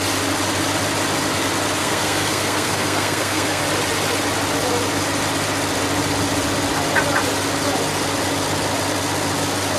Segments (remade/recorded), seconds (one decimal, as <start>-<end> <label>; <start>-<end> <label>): 0.0-1.8 recorded; 1.8-3.6 remade; 3.6-9.8 recorded